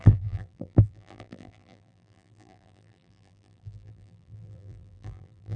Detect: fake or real fake